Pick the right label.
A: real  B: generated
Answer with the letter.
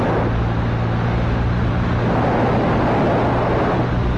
A